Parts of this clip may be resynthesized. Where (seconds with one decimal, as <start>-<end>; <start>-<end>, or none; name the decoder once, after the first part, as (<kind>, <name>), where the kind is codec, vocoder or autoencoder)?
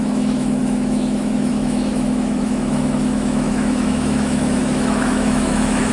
0.0-5.9 (autoencoder, DAC-VAE)